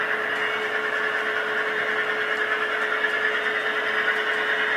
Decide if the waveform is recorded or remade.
recorded